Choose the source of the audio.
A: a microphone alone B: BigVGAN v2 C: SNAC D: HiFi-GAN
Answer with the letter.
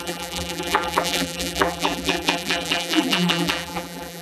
B